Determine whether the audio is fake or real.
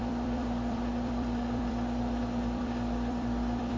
fake